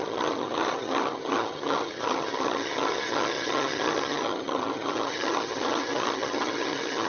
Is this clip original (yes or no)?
no